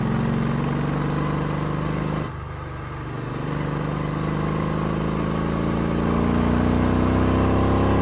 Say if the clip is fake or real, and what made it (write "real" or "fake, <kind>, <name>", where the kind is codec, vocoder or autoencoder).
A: real